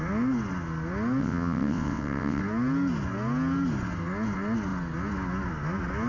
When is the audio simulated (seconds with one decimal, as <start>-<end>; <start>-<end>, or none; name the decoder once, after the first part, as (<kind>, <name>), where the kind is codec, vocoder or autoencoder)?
1.2-2.4 (vocoder, WaveNeXt)